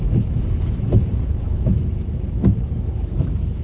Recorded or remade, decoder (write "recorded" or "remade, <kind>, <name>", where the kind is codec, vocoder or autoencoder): remade, autoencoder, DAC-VAE